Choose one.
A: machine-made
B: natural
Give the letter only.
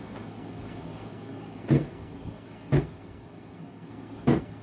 A